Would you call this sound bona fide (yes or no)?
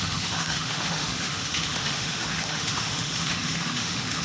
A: no